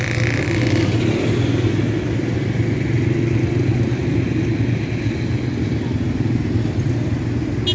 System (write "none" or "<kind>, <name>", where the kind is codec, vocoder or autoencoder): none